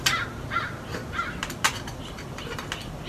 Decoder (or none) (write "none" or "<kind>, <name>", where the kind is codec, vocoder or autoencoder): none